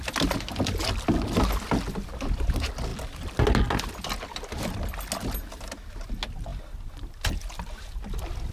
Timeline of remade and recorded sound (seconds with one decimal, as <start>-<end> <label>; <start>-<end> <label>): 0.0-8.5 recorded